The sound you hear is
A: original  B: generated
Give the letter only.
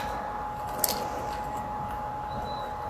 A